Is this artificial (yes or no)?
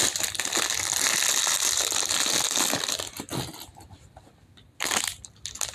no